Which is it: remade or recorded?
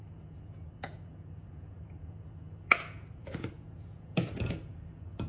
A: remade